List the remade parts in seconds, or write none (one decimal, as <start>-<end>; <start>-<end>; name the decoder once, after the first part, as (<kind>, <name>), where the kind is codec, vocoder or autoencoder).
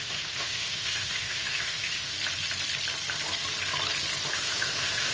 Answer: 0.0-2.1 (autoencoder, DAC-VAE); 4.3-5.1